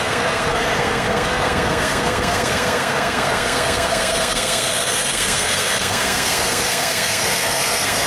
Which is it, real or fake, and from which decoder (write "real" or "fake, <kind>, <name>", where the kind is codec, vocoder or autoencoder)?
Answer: fake, codec, SNAC